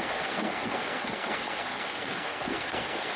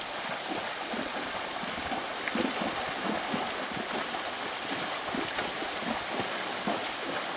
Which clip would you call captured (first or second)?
second